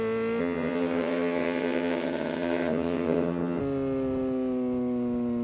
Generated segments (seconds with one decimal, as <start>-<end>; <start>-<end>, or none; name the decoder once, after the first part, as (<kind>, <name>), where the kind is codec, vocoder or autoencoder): 0.4-3.6 (vocoder, HiFi-GAN)